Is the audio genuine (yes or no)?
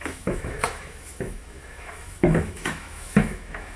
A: no